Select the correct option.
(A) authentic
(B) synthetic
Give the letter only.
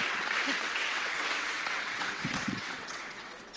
B